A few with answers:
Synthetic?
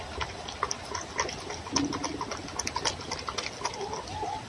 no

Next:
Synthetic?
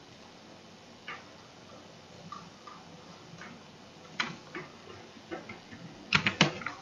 no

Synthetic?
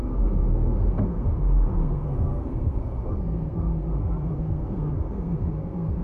yes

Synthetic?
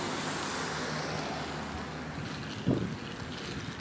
no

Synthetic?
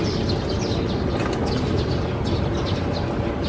no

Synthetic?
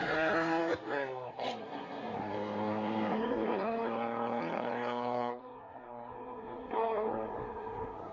yes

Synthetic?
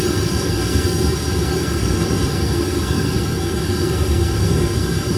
yes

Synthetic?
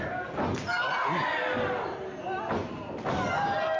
no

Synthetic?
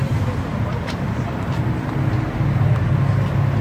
no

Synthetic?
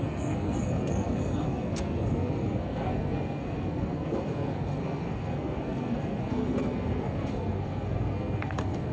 yes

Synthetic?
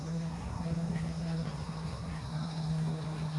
yes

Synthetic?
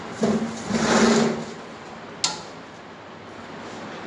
no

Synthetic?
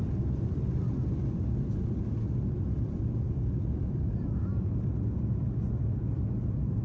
no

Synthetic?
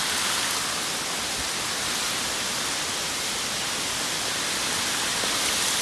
no